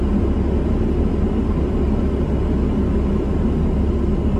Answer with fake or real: real